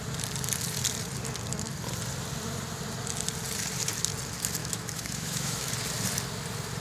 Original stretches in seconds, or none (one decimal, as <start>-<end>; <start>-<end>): 0.0-4.6; 5.7-6.8